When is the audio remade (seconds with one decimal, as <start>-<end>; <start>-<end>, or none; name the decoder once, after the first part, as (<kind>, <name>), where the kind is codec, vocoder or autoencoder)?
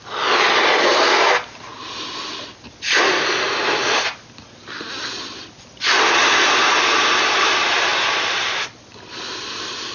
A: none